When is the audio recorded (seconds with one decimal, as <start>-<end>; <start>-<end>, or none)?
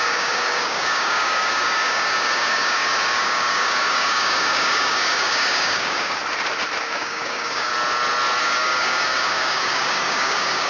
6.2-6.8; 7.7-8.4